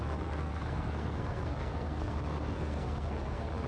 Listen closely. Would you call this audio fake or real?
fake